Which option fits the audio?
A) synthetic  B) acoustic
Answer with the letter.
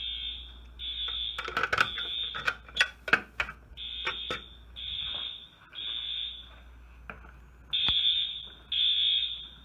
B